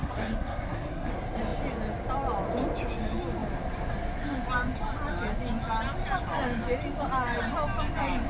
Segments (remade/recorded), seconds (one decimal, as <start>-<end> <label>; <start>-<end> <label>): 0.0-1.1 remade; 1.1-8.3 recorded